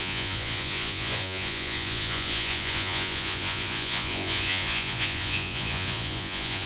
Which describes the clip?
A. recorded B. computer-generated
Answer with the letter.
B